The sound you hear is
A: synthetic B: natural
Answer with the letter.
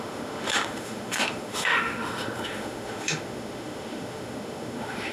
A